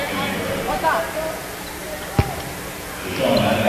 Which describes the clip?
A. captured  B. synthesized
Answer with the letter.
A